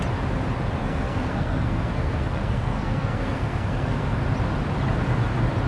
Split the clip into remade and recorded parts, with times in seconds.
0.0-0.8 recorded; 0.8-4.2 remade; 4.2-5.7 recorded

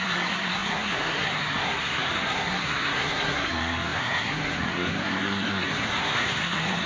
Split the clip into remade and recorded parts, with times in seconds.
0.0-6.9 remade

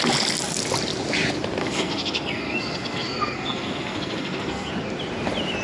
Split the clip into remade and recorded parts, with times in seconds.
0.0-1.6 recorded; 1.6-4.7 remade; 4.7-5.6 recorded

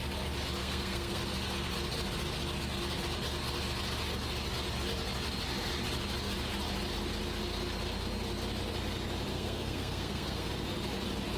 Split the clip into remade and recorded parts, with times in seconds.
0.0-0.6 recorded; 0.6-1.2 remade; 1.2-9.3 recorded; 9.3-10.5 remade; 10.5-11.4 recorded